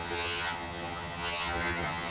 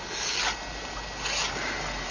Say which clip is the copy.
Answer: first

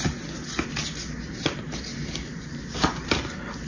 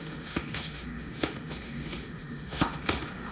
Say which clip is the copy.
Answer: second